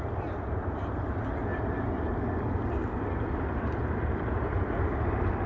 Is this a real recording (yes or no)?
yes